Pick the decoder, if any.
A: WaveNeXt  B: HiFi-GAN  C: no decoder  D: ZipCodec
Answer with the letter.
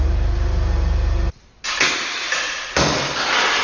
C